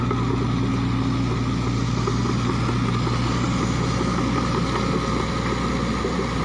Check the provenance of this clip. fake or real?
real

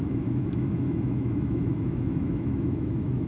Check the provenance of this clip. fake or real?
fake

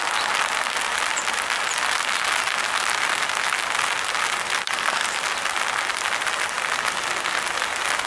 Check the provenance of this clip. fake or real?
real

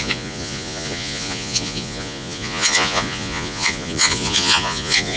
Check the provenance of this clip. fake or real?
fake